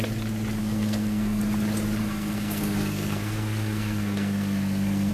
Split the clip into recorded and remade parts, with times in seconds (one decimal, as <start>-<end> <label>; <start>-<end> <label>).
0.0-0.6 recorded; 0.6-1.4 remade; 1.4-2.0 recorded; 2.0-5.1 remade